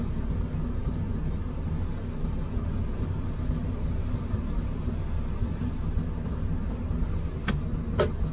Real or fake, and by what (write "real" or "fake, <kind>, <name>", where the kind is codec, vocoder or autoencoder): real